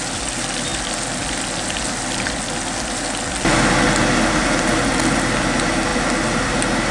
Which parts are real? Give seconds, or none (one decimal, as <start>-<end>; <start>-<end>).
0.0-6.9

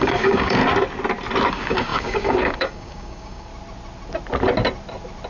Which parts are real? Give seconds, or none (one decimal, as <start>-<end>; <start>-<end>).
0.6-1.5; 3.5-5.3

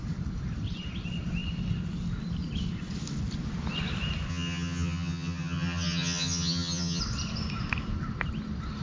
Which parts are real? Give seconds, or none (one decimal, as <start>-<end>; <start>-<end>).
0.0-4.3; 7.0-8.8